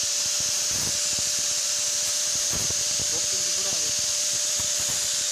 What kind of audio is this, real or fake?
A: real